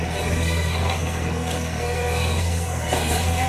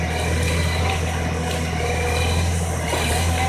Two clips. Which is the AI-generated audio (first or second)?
first